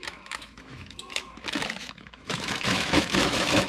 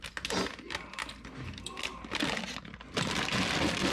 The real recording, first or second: second